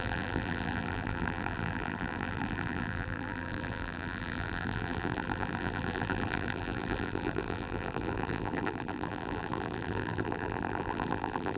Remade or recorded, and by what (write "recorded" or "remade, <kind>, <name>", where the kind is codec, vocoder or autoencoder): remade, vocoder, BigVGAN v2